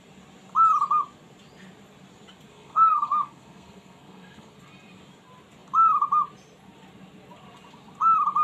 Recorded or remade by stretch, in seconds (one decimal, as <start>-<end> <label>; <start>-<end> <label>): 0.0-2.5 recorded; 2.5-4.5 remade; 4.5-8.4 recorded